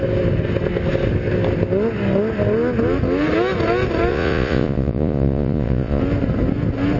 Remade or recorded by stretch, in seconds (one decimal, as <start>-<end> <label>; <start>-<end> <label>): 0.0-4.1 recorded; 4.1-6.0 remade; 6.0-7.0 recorded